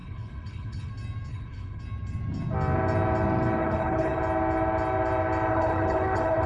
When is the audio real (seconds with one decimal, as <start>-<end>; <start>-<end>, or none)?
0.9-1.3; 1.8-3.6; 4.2-5.5